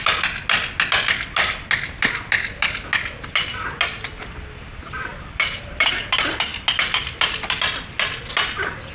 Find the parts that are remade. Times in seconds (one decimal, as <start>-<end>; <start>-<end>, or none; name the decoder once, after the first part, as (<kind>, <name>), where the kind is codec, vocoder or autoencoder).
5.1-5.9 (vocoder, BigVGAN v2)